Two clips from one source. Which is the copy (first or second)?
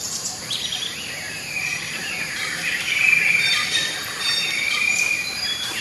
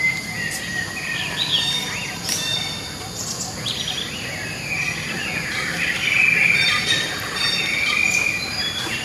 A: first